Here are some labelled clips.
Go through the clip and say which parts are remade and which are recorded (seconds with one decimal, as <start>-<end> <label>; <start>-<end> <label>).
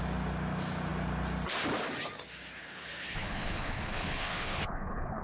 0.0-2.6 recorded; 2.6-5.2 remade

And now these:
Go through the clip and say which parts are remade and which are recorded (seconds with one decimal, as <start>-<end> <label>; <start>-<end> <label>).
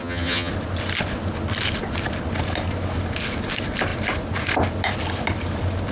0.0-0.5 remade; 0.5-5.9 recorded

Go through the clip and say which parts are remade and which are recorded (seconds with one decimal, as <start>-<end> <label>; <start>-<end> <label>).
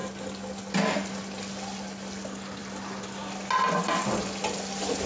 0.0-5.1 recorded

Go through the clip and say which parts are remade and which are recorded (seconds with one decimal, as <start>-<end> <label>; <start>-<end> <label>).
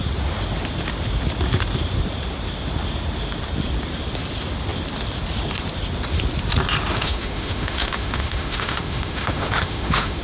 0.0-6.9 recorded; 6.9-10.2 remade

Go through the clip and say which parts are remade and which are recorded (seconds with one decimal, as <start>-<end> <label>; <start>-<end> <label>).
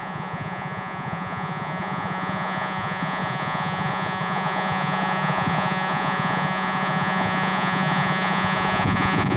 0.0-9.4 remade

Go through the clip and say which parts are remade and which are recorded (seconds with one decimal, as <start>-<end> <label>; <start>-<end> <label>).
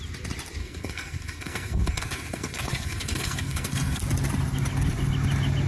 0.0-0.6 recorded; 0.6-4.0 remade; 4.0-5.7 recorded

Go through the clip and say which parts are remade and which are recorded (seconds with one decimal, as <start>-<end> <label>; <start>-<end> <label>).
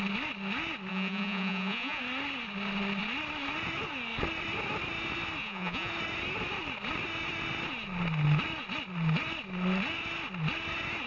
0.0-0.9 recorded; 0.9-2.0 remade; 2.0-5.4 recorded; 5.4-5.9 remade; 5.9-11.1 recorded